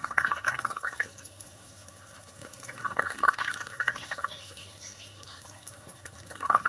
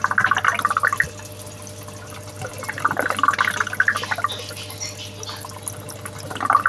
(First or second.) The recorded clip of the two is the second